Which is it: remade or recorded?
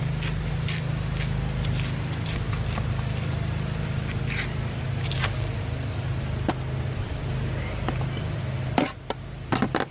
recorded